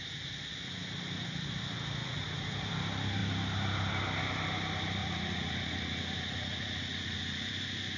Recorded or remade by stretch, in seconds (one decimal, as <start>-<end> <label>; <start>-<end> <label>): 0.0-2.0 recorded; 2.0-2.5 remade; 2.5-5.0 recorded; 5.0-7.5 remade; 7.5-8.0 recorded